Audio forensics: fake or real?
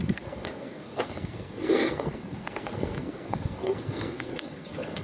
fake